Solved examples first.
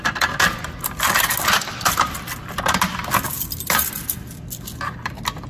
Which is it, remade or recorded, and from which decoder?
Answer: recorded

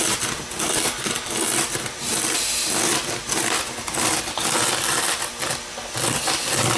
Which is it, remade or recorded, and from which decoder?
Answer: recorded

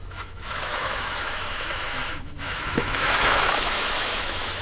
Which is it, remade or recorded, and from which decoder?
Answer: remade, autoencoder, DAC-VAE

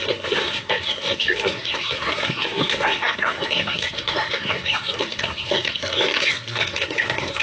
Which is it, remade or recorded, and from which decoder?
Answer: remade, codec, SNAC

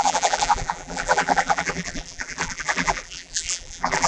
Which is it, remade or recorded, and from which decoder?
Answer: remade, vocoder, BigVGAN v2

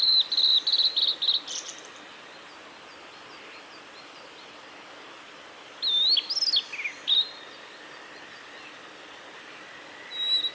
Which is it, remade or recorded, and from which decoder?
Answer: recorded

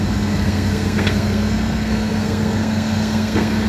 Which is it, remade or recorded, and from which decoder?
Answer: remade, codec, SNAC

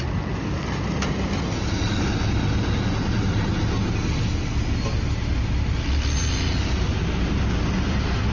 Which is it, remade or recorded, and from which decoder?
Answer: recorded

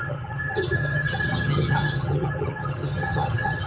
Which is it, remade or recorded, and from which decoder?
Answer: remade, vocoder, HiFi-GAN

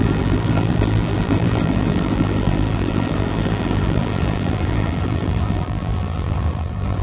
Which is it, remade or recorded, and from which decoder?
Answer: remade, vocoder, BigVGAN v2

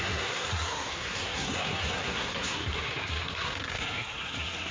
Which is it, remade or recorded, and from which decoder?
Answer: remade, codec, SNAC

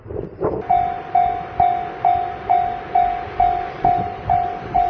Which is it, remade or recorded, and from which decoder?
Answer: recorded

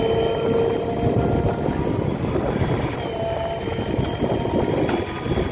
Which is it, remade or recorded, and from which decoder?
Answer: recorded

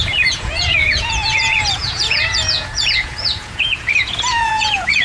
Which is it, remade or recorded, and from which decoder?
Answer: remade, vocoder, Vocos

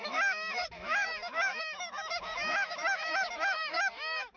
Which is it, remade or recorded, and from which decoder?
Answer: remade, autoencoder, DAC-VAE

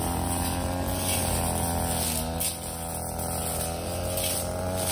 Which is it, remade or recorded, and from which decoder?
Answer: recorded